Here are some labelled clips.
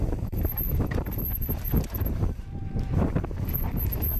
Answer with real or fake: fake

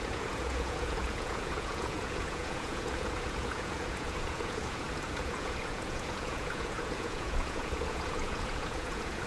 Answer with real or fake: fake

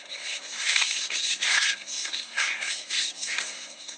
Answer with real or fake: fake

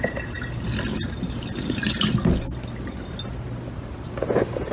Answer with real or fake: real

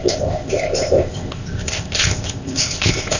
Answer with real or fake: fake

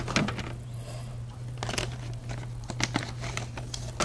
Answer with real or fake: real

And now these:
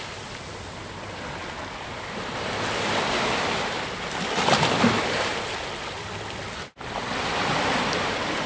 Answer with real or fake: real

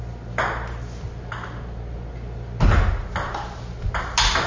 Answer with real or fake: real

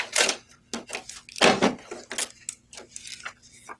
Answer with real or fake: real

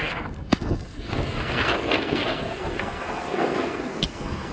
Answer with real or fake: fake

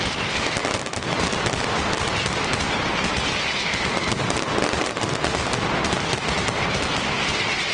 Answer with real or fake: real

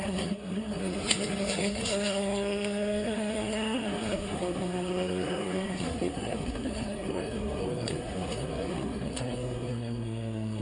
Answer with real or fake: fake